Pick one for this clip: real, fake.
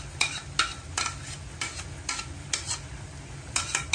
real